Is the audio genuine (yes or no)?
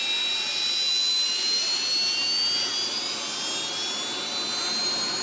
yes